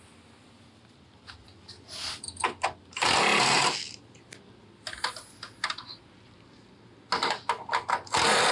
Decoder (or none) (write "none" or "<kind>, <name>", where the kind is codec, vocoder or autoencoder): none